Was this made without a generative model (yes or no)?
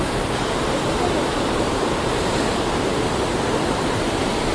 yes